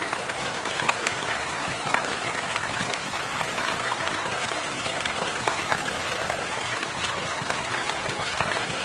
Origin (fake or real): fake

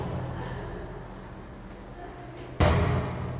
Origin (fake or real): real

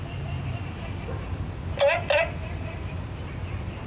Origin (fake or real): real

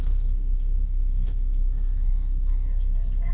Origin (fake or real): fake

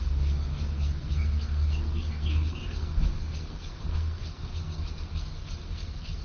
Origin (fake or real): fake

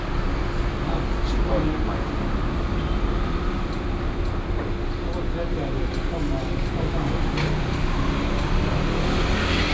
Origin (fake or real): real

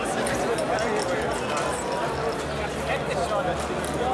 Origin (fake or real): real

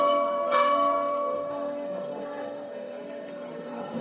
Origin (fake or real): fake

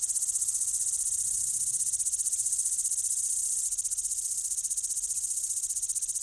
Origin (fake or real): real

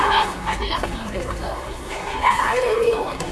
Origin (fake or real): fake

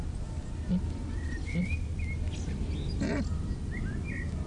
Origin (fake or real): real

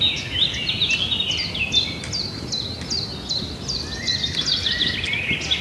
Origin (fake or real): real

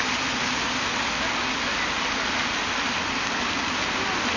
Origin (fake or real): real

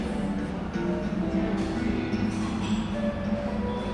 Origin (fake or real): real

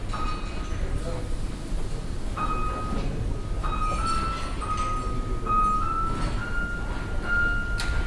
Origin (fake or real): real